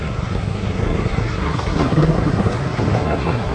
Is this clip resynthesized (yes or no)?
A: yes